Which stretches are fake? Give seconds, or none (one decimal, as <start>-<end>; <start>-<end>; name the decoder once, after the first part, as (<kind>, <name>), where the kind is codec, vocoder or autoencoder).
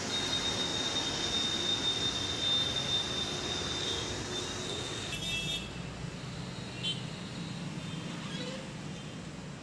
none